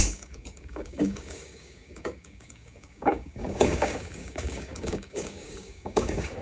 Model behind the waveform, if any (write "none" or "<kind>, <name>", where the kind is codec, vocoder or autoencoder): codec, DAC